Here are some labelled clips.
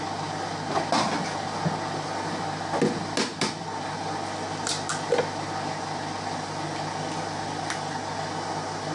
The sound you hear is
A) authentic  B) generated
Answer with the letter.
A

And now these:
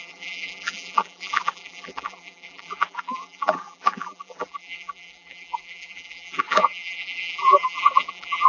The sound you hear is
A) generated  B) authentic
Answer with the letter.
A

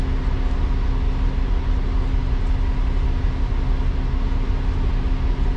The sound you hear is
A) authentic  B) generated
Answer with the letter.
A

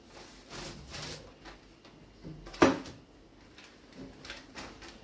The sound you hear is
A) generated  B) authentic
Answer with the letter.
B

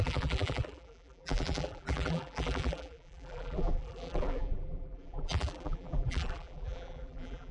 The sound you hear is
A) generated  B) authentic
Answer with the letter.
A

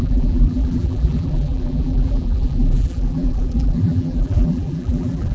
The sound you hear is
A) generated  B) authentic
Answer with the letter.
A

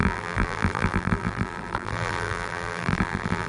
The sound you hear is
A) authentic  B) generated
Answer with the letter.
B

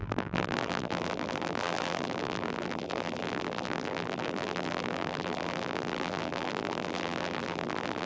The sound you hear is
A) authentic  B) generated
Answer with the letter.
B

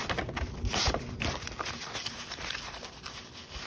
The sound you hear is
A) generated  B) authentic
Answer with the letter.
B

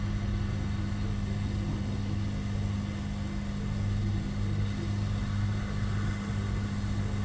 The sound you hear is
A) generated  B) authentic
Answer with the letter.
B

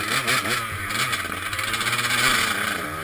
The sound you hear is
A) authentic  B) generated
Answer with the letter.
A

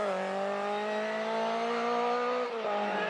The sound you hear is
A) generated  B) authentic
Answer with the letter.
B